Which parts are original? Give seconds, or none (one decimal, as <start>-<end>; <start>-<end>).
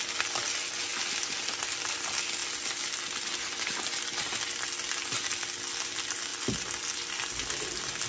0.0-8.1